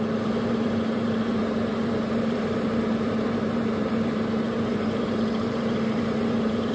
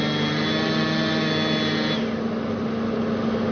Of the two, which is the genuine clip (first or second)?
second